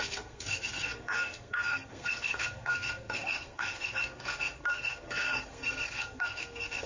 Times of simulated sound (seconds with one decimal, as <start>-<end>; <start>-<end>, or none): 0.0-6.9

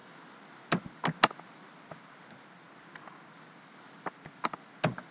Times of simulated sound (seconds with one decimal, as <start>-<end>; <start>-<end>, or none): none

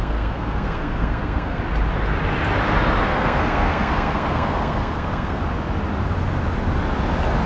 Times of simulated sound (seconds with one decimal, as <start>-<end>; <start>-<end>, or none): 0.0-1.6; 3.1-5.4

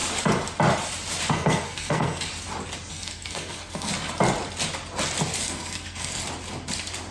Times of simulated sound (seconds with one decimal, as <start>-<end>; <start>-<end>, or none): 1.3-2.3; 2.9-3.9; 5.4-6.2

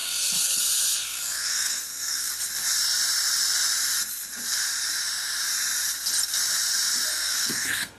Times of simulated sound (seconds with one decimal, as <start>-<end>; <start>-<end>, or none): 0.0-0.6; 1.0-2.3; 7.1-8.0

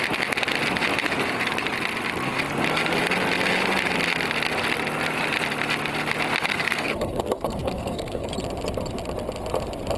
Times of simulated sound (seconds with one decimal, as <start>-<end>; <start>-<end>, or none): 6.5-8.3

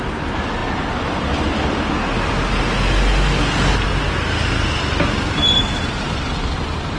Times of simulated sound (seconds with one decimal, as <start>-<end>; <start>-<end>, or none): none